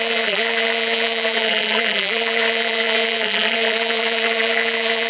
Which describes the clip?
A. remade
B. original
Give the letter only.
A